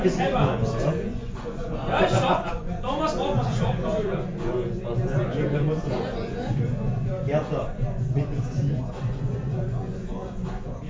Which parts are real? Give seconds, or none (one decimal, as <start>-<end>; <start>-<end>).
none